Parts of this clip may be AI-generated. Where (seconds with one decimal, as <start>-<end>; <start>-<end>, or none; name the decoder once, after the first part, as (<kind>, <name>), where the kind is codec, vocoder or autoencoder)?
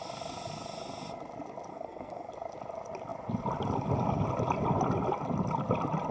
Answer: 1.7-2.3 (codec, SNAC)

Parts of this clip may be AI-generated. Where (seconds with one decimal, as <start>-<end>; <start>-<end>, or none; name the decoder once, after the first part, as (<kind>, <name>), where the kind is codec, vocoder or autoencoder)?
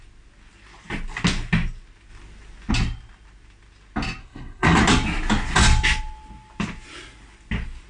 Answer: 4.2-4.8 (codec, SNAC)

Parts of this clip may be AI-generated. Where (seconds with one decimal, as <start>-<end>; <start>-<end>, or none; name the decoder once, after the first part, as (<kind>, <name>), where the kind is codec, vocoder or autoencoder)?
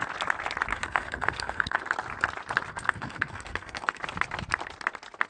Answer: 0.7-1.8 (codec, SNAC); 2.7-4.0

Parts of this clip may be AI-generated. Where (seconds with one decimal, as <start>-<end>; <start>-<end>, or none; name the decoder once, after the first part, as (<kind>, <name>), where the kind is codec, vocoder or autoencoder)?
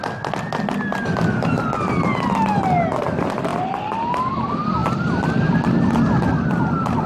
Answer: none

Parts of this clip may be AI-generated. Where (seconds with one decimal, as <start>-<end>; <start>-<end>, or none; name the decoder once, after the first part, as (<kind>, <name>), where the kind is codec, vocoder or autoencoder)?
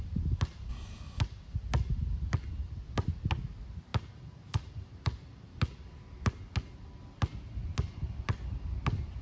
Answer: 0.7-1.2 (codec, SNAC)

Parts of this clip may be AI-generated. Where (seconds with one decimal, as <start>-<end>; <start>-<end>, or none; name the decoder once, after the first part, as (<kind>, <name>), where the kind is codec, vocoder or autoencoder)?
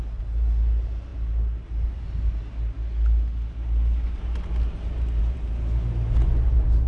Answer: none